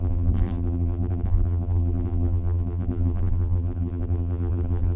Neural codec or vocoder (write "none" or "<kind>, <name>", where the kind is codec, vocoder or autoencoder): vocoder, BigVGAN v2